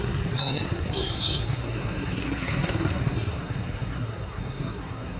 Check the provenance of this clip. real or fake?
fake